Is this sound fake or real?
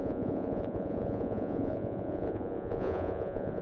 fake